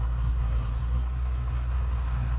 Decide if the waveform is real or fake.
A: fake